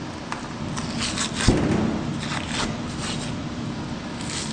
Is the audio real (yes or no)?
yes